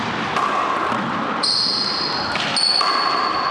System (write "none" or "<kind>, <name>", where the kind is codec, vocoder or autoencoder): none